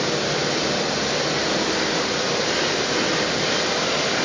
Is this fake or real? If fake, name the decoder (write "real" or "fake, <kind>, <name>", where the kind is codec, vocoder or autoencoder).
real